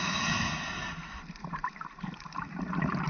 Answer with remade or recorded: recorded